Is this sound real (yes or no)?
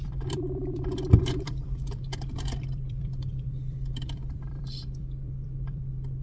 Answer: no